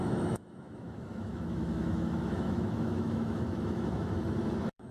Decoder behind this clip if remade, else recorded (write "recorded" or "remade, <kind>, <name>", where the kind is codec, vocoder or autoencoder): remade, autoencoder, DAC-VAE